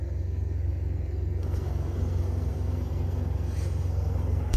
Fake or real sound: fake